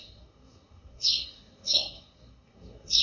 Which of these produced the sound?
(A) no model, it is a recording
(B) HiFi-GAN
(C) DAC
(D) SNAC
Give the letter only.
D